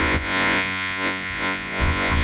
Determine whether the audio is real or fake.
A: fake